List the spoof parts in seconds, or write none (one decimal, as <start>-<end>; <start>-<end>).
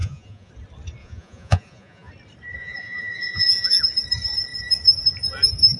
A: 0.0-0.5; 1.0-2.1; 2.6-3.8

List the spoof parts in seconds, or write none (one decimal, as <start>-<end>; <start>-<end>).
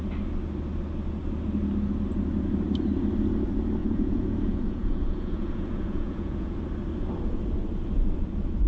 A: 3.8-6.6